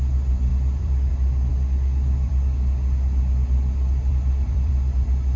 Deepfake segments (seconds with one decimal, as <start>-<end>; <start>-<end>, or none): 0.5-1.1; 4.1-4.7